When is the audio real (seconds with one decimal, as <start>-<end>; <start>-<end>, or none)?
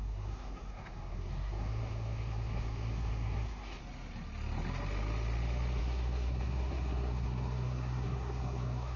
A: 3.8-5.8